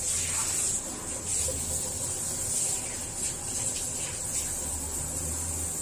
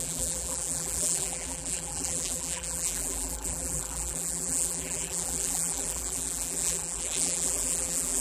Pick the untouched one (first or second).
first